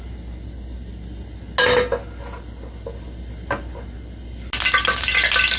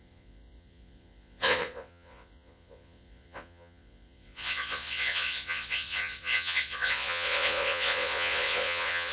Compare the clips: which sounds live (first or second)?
first